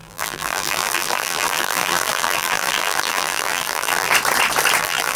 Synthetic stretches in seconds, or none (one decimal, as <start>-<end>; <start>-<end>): 0.0-4.1; 4.8-5.2